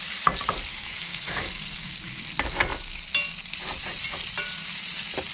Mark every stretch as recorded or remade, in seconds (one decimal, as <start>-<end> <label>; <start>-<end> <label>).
0.0-0.7 recorded; 0.7-2.2 remade; 2.2-5.3 recorded